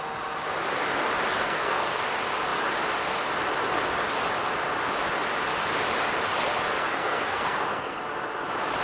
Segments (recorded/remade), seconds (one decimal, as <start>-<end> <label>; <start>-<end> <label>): 0.0-1.4 recorded; 1.4-2.0 remade; 2.0-6.7 recorded; 6.7-8.0 remade; 8.0-8.8 recorded